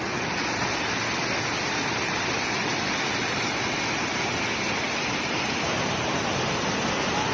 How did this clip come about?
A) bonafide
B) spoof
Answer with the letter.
A